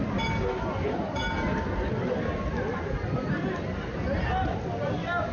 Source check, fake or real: real